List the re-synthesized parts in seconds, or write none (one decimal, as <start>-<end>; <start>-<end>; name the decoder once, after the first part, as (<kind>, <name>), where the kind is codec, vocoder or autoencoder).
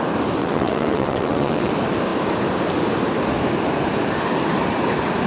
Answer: 0.4-1.7 (vocoder, WaveNeXt)